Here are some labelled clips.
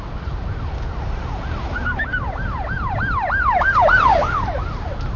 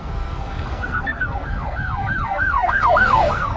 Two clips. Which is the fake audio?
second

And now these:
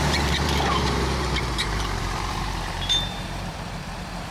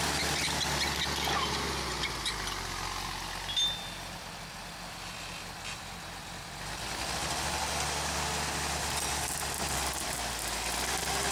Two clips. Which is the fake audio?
first